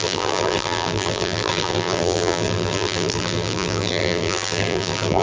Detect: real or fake fake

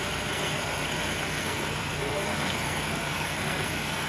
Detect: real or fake fake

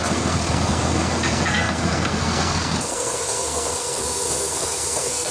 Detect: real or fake fake